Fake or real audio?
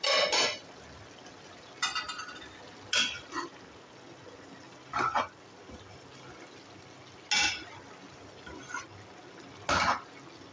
real